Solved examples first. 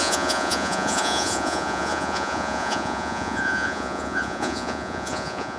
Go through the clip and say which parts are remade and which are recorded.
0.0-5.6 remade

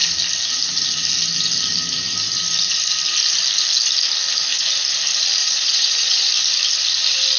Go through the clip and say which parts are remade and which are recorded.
0.0-5.4 recorded; 5.4-6.3 remade; 6.3-7.4 recorded

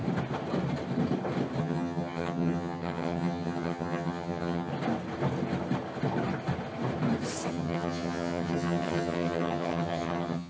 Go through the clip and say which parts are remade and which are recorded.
0.0-1.6 recorded; 1.6-4.7 remade; 4.7-7.5 recorded; 7.5-10.5 remade

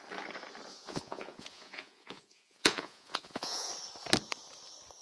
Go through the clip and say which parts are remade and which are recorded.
0.0-0.7 recorded; 0.7-3.7 remade; 3.7-5.0 recorded